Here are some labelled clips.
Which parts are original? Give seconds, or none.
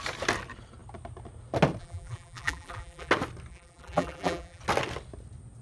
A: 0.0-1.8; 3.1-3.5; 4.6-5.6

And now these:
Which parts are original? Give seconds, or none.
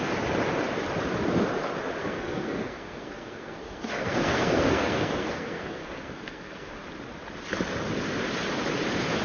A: 0.0-2.0; 6.8-9.2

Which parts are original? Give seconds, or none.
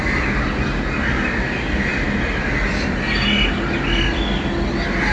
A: 0.0-5.1